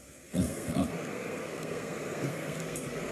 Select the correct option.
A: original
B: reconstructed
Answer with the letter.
B